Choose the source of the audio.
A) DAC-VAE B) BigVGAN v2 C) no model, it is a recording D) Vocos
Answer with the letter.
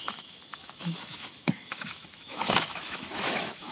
A